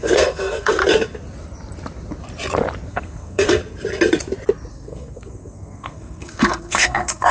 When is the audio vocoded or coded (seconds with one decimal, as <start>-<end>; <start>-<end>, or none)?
0.0-0.8; 2.9-3.6; 4.7-7.3